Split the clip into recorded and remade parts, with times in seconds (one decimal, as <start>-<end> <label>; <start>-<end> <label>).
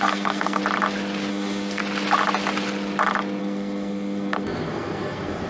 0.0-0.6 remade; 0.6-1.3 recorded; 1.3-1.8 remade; 1.8-3.4 recorded; 3.4-5.5 remade